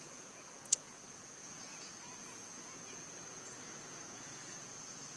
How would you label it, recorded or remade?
remade